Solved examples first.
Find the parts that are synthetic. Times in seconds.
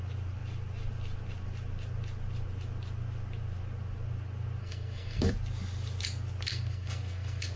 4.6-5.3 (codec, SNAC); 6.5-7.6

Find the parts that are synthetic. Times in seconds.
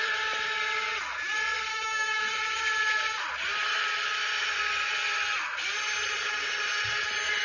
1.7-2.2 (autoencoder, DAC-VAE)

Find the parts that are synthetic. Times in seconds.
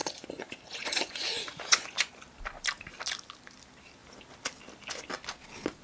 0.0-2.1 (vocoder, Vocos)